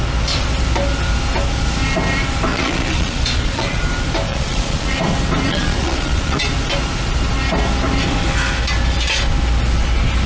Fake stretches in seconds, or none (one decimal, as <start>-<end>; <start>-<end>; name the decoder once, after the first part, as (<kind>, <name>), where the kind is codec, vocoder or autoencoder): 2.5-3.8 (vocoder, Vocos); 4.3-5.0; 5.5-6.4